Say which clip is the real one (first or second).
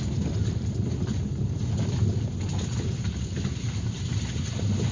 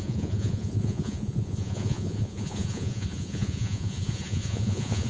first